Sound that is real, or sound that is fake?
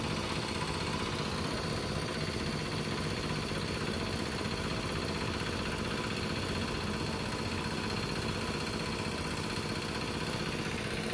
real